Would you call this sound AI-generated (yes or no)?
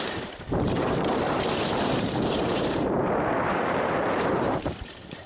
yes